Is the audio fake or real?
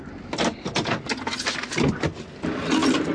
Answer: real